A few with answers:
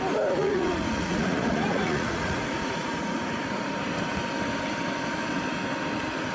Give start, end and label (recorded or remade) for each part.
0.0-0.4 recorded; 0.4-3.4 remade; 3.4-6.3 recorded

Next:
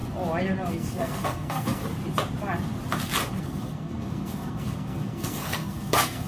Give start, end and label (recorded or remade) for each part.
0.0-0.7 recorded; 0.7-1.8 remade; 1.8-3.4 recorded; 3.4-6.3 remade

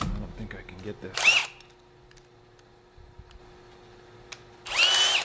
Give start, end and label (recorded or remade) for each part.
0.0-5.2 recorded

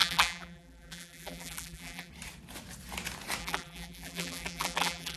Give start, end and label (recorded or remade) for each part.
0.0-2.1 remade; 2.1-3.4 recorded; 3.4-5.2 remade

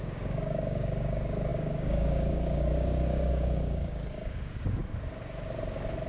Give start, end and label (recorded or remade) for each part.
0.0-4.8 remade; 4.8-6.1 recorded

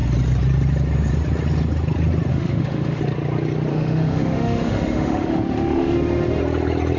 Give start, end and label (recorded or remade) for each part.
0.0-2.3 recorded; 2.3-3.0 remade; 3.0-3.7 recorded; 3.7-6.4 remade; 6.4-7.0 recorded

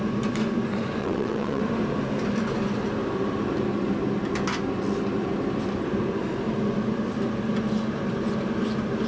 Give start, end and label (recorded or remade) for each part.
0.0-1.0 recorded; 1.0-1.6 remade; 1.6-9.1 recorded

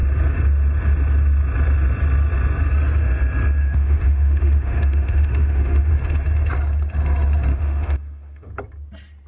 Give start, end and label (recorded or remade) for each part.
0.0-3.6 recorded; 3.6-5.9 remade; 5.9-7.5 recorded; 7.5-8.5 remade; 8.5-9.3 recorded